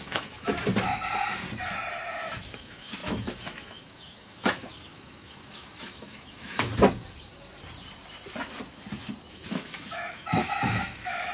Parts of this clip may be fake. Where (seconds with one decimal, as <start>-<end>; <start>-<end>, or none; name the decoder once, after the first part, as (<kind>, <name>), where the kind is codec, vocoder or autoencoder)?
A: 0.0-0.5 (autoencoder, DAC-VAE); 2.4-6.7; 9.3-11.3